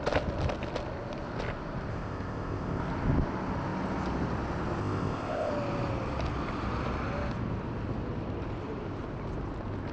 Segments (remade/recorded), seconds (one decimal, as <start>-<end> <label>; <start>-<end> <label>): 0.0-1.9 recorded; 1.9-2.8 remade; 2.8-4.8 recorded; 4.8-5.5 remade; 5.5-9.9 recorded